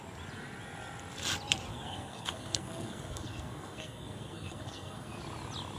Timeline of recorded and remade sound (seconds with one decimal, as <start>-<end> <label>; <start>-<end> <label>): 0.0-1.7 recorded; 1.7-5.2 remade; 5.2-5.8 recorded